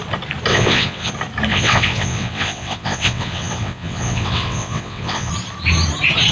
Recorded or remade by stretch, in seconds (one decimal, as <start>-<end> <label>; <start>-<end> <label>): 0.0-0.5 recorded; 0.5-1.1 remade; 1.1-1.5 recorded; 1.5-5.3 remade; 5.3-6.3 recorded